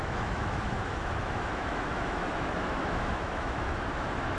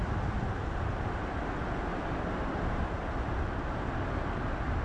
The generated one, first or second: first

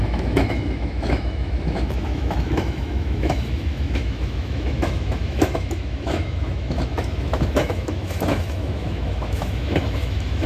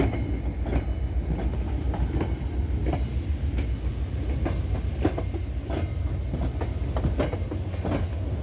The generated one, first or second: first